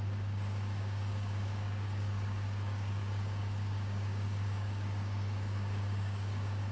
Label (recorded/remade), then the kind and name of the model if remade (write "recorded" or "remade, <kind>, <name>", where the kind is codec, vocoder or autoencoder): remade, codec, DAC